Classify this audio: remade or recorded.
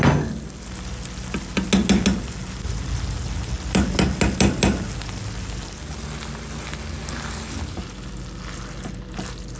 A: recorded